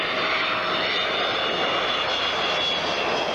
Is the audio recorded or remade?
recorded